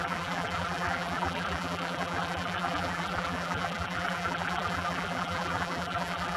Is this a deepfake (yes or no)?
yes